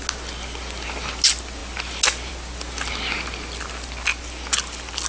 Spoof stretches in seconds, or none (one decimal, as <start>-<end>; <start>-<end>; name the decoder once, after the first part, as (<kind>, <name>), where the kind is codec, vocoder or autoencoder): none